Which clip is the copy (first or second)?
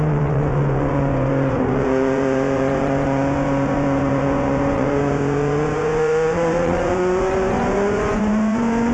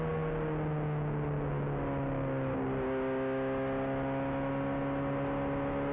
first